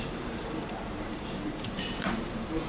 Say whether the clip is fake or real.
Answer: fake